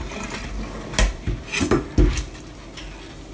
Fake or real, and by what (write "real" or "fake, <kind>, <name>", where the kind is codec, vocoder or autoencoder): real